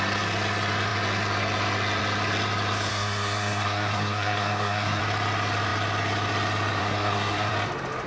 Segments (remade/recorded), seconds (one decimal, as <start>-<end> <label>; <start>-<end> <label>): 0.0-2.9 recorded; 2.9-5.0 remade; 5.0-6.8 recorded; 6.8-7.5 remade; 7.5-8.1 recorded